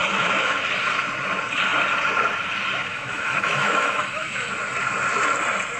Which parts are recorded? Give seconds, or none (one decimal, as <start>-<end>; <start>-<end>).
0.6-2.9; 4.5-5.8